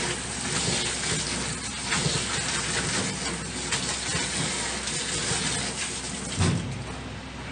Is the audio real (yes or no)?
yes